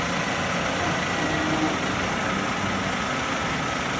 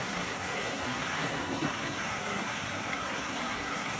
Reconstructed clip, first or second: second